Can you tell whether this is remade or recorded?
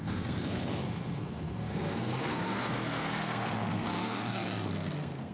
remade